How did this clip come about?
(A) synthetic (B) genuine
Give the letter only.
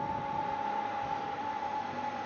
B